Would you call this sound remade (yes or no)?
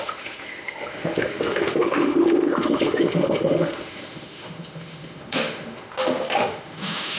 yes